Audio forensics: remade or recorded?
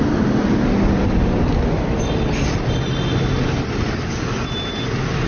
recorded